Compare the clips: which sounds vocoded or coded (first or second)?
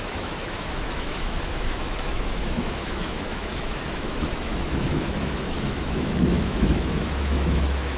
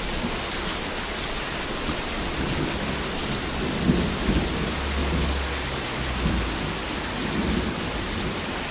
first